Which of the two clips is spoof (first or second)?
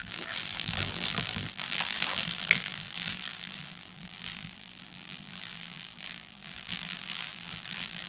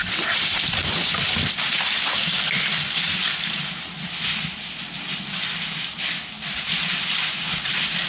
first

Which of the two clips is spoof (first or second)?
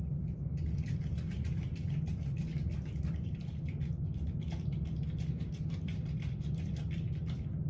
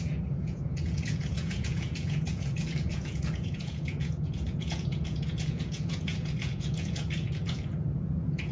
second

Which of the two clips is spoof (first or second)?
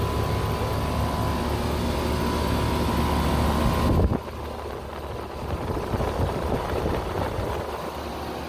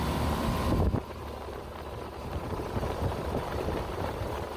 second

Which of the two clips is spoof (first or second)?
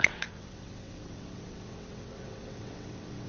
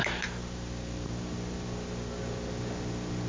first